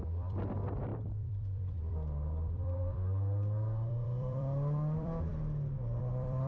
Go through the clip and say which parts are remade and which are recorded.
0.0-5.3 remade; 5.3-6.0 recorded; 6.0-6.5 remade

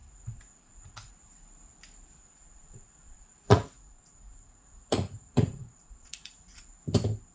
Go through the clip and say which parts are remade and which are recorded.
0.0-1.1 remade; 1.1-2.2 recorded; 2.2-6.6 remade; 6.6-7.3 recorded